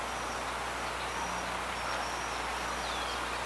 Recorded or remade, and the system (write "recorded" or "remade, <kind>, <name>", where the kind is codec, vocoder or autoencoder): recorded